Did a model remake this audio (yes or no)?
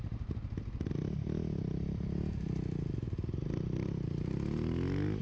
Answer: no